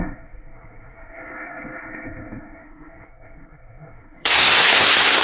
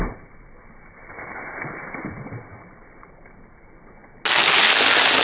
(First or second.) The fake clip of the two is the first